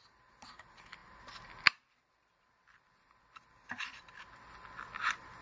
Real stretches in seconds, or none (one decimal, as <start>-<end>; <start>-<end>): 0.0-5.4